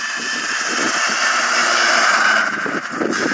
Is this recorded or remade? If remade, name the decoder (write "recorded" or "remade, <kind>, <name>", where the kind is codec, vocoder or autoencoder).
remade, vocoder, BigVGAN v2